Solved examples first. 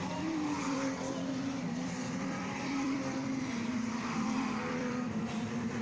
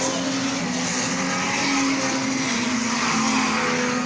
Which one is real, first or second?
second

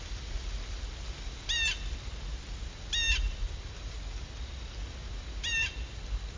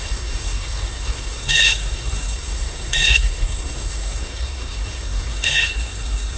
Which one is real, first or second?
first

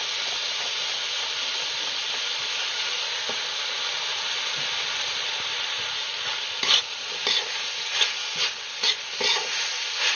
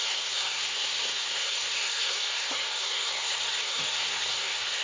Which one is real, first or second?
first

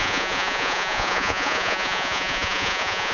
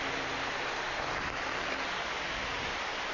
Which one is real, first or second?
second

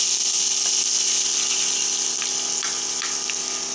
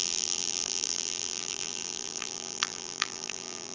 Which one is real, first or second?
first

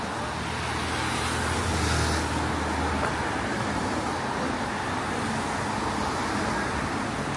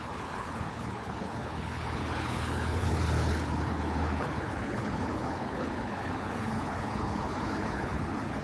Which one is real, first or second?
first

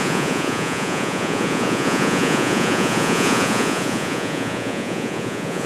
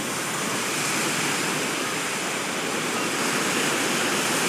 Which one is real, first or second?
second